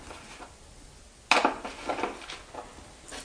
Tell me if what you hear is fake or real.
real